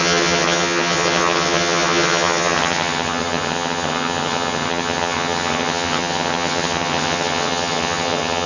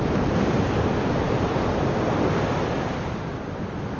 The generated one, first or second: first